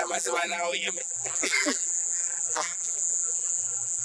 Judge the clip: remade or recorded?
remade